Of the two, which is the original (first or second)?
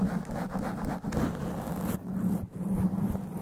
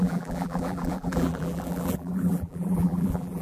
first